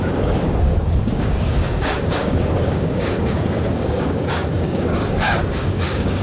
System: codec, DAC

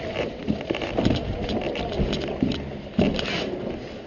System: none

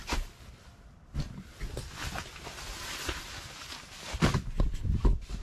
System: none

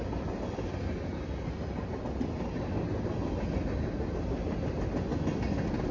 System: none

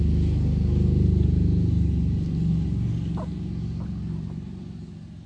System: none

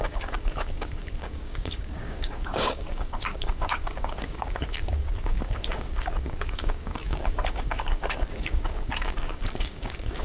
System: codec, DAC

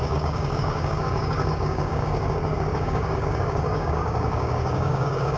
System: codec, DAC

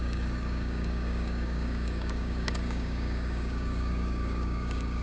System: codec, DAC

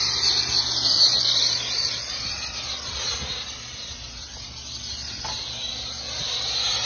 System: none